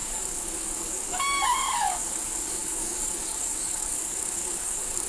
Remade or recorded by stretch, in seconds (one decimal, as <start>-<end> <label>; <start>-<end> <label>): 0.0-5.1 remade